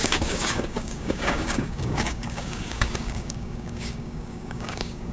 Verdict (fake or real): fake